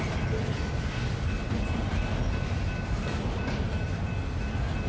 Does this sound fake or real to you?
real